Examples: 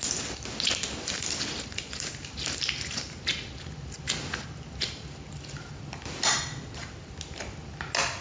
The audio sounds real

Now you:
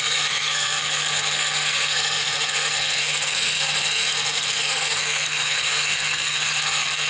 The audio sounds fake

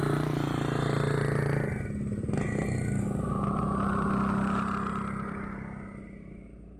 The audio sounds real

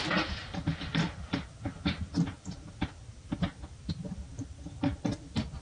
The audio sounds real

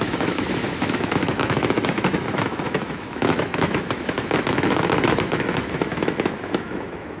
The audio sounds fake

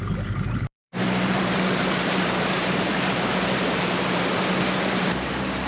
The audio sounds fake